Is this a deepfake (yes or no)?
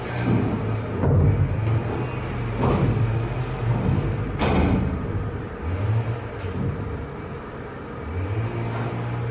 no